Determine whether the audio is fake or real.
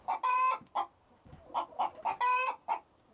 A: real